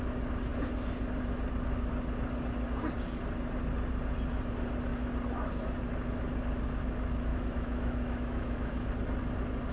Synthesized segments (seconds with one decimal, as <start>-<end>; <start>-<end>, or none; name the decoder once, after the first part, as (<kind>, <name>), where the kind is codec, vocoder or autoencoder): 7.3-8.9 (autoencoder, DAC-VAE)